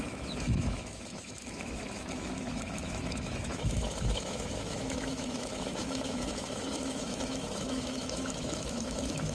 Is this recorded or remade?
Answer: remade